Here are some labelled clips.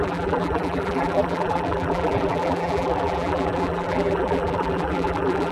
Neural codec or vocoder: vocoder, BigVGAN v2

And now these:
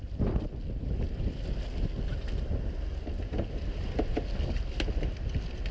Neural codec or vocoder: none